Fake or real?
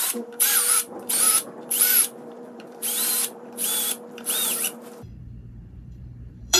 fake